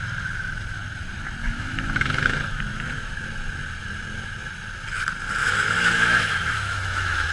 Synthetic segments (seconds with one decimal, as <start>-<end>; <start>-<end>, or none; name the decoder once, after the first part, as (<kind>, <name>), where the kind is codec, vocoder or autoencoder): 1.4-2.6 (autoencoder, DAC-VAE); 5.4-7.3